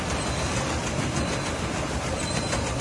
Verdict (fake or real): real